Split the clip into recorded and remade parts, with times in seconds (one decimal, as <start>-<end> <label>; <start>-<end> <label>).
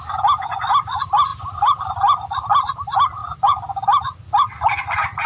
0.0-5.3 recorded